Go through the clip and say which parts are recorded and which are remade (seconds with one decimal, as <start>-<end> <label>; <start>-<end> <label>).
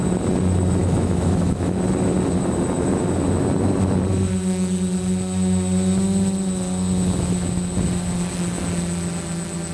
0.0-0.8 recorded; 0.8-1.8 remade; 1.8-9.7 recorded